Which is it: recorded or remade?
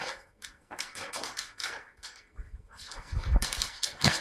remade